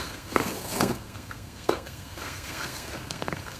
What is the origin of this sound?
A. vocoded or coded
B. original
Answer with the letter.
A